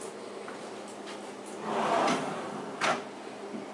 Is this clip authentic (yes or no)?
yes